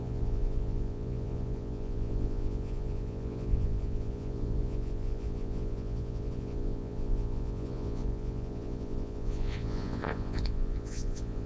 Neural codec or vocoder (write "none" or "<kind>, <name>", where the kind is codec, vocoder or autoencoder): vocoder, Vocos